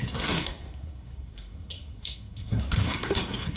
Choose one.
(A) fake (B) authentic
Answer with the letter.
A